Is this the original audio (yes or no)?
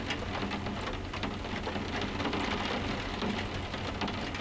yes